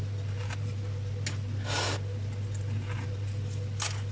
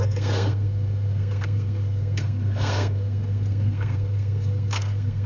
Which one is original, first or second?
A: first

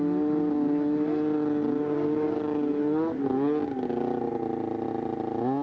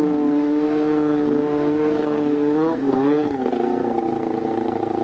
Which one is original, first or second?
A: first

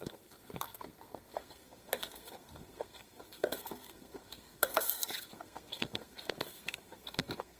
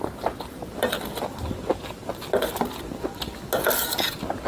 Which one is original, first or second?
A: second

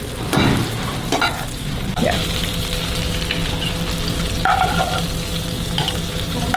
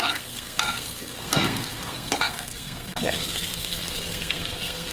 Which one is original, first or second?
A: first